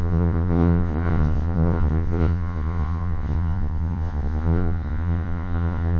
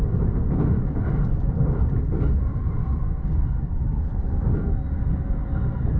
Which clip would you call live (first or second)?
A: second